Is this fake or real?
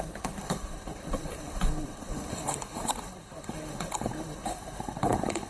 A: fake